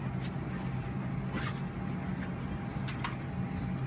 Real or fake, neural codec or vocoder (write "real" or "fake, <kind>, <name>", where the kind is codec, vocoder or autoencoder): real